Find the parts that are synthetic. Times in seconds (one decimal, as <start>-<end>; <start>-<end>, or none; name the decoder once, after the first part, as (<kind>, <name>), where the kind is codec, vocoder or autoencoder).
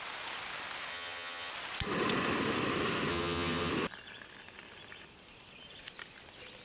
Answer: 0.9-1.5 (vocoder, HiFi-GAN); 3.1-3.7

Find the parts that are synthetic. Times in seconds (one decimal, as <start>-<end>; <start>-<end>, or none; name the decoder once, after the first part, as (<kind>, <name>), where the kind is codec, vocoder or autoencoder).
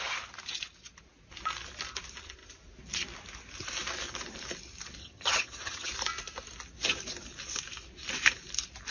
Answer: 5.0-5.9 (vocoder, HiFi-GAN)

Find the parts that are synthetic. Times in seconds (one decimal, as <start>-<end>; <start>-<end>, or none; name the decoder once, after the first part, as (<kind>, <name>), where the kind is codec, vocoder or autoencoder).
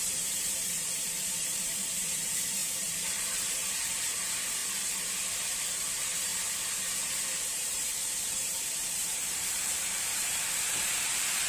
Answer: 0.0-4.6 (vocoder, BigVGAN v2); 5.5-6.3; 7.4-11.5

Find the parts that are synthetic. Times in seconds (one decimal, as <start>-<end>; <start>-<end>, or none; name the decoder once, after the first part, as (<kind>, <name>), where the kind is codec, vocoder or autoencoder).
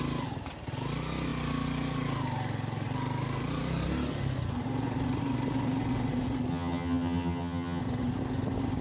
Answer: 6.5-7.8 (vocoder, HiFi-GAN)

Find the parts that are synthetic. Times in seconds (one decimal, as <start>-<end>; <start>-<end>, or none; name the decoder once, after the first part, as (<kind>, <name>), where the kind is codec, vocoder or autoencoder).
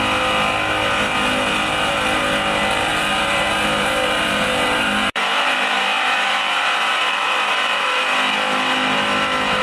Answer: 2.9-8.0 (vocoder, BigVGAN v2)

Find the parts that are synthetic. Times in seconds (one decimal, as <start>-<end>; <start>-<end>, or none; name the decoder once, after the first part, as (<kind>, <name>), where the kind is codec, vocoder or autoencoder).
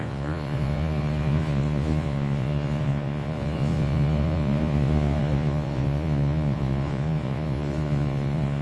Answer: 0.0-8.6 (vocoder, Vocos)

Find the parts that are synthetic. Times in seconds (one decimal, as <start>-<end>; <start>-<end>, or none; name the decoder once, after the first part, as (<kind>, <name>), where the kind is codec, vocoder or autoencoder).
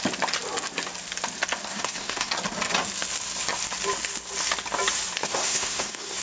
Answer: 1.7-2.3 (codec, SNAC); 5.2-6.2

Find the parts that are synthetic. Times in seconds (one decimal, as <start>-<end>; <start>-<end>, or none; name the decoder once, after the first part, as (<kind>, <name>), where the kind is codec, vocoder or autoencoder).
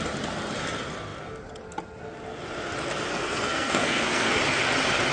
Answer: 3.1-4.4 (codec, SNAC)